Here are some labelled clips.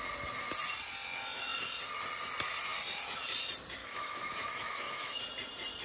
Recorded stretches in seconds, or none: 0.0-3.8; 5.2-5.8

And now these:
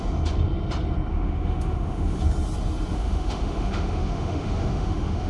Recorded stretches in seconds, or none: 0.0-1.1; 2.2-2.9

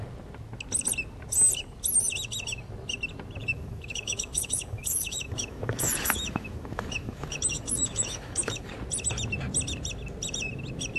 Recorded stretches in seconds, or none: 0.0-3.4; 8.7-11.0

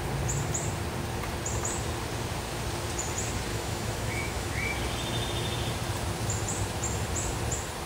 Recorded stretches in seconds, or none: 0.0-3.5; 4.5-7.9

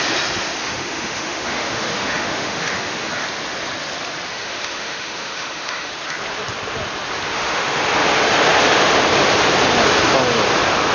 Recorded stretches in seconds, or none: 0.0-0.6; 3.1-4.3; 5.9-7.3; 7.8-10.9

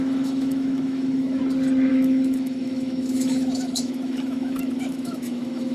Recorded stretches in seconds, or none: 1.4-1.9

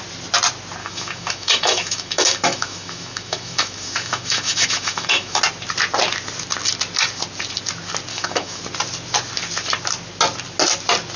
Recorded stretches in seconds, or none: 0.0-0.8; 5.4-8.1; 8.6-11.2

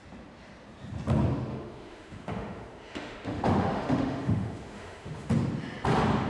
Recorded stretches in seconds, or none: 0.0-1.5; 5.3-6.3